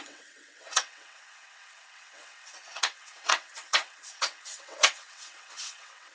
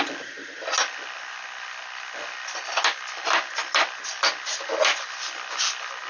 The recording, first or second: second